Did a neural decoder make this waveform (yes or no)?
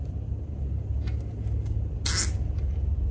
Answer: no